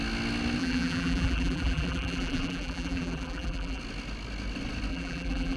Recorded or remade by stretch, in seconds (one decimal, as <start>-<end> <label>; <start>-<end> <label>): 0.0-0.6 recorded; 0.6-3.8 remade; 3.8-4.9 recorded; 4.9-5.6 remade